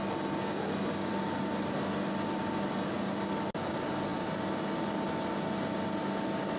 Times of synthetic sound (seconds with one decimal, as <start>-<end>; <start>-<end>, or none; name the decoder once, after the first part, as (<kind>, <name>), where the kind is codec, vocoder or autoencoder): none